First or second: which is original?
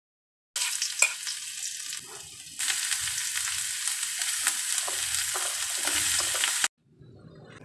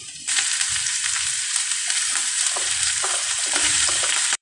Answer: first